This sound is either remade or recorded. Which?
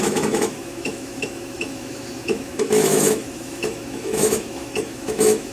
remade